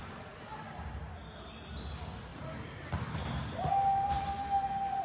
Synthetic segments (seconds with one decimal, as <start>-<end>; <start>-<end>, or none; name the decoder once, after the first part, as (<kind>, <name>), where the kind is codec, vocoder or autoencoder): 0.0-0.5 (vocoder, Vocos)